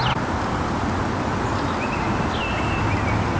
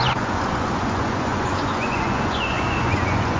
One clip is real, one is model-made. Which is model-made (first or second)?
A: second